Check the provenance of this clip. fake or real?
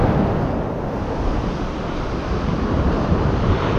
real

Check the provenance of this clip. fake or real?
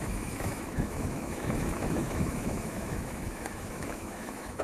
fake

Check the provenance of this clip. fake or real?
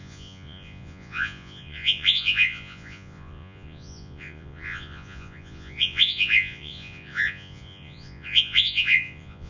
fake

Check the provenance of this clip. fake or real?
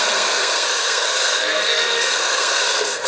fake